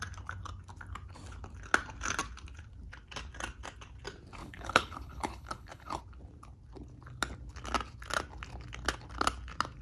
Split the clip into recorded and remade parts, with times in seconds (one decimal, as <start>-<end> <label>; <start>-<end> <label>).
0.0-4.4 recorded; 4.4-6.0 remade; 6.0-9.8 recorded